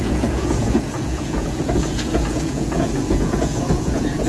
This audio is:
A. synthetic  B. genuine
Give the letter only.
A